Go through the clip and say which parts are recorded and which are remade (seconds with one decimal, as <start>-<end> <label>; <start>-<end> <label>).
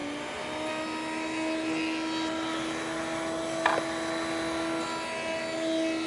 0.0-6.1 recorded